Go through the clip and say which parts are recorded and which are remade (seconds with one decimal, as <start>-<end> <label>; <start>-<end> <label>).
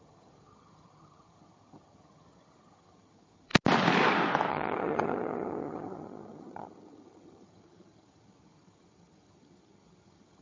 0.0-3.5 remade; 3.5-4.5 recorded; 4.5-10.4 remade